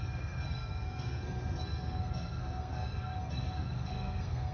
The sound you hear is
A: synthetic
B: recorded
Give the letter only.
A